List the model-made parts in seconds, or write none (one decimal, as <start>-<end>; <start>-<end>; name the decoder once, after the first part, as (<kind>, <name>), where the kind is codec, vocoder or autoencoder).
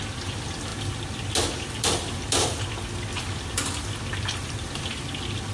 none